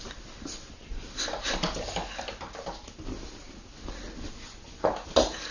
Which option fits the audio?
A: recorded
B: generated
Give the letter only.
A